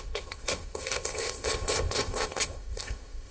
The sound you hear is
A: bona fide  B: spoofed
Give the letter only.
B